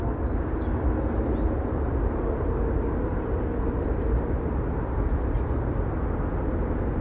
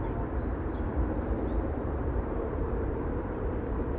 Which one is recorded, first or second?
first